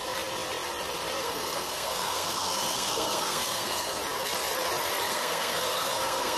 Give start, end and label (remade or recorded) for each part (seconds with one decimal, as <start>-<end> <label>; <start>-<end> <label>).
0.0-1.2 recorded; 1.2-4.0 remade; 4.0-5.1 recorded; 5.1-6.4 remade